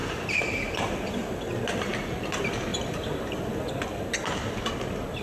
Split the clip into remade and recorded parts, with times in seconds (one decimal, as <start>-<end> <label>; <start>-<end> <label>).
0.0-0.9 remade; 0.9-5.2 recorded